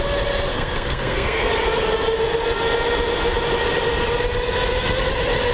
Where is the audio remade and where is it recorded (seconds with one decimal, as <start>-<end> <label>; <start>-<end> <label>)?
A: 0.0-0.5 recorded; 0.5-1.5 remade; 1.5-5.5 recorded